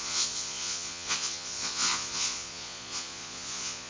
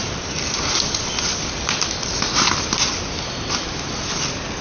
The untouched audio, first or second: second